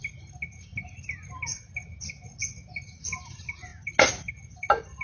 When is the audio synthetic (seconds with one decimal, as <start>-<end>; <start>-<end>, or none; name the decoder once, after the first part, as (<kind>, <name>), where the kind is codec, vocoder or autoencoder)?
none